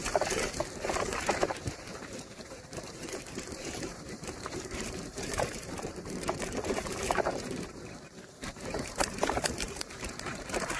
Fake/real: fake